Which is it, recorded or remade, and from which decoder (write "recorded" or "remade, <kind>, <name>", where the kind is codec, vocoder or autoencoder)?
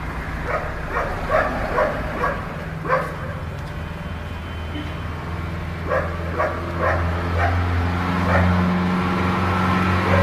recorded